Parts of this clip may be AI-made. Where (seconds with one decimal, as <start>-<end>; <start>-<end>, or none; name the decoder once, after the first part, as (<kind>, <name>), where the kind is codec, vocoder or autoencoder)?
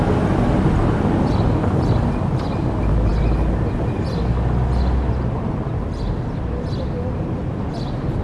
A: none